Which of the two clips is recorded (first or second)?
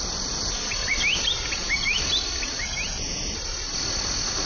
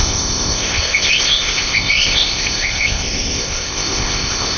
first